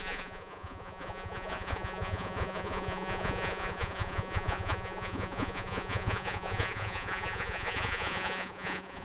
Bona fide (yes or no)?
no